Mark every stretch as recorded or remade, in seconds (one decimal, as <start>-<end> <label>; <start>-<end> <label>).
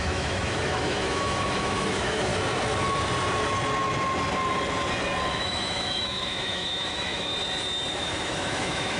0.0-2.3 remade; 2.3-5.3 recorded; 5.3-7.3 remade; 7.3-7.9 recorded; 7.9-9.0 remade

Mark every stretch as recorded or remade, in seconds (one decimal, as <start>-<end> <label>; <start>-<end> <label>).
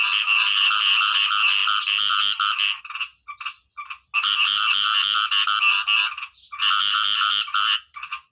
0.0-8.3 recorded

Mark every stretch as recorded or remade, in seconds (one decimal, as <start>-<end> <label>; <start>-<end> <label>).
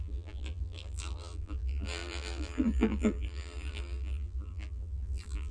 0.0-5.5 remade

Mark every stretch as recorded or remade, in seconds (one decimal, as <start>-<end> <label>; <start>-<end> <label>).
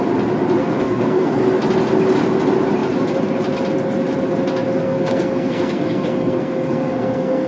0.0-0.6 recorded; 0.6-1.4 remade; 1.4-4.8 recorded; 4.8-7.5 remade